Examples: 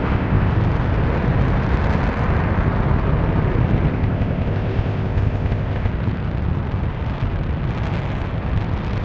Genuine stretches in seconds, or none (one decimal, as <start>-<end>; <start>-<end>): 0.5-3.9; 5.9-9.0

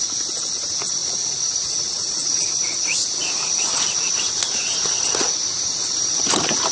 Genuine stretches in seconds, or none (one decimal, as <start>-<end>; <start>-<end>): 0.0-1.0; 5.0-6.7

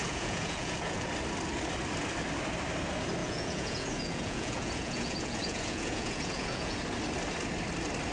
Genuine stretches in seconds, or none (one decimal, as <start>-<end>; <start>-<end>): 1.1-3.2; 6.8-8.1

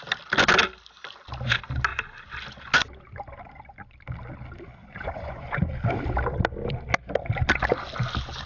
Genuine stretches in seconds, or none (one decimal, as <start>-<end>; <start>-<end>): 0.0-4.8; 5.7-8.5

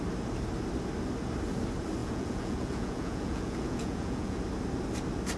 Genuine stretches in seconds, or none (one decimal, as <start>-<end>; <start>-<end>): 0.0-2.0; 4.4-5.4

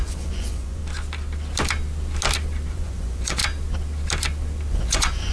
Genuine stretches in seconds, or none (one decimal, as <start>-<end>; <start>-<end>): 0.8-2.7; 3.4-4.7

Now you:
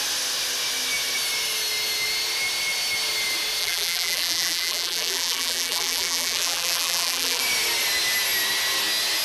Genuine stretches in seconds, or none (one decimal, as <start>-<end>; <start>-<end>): 0.0-3.6; 7.4-9.2

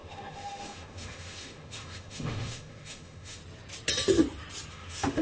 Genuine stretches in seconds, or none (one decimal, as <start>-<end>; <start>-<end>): 3.4-4.7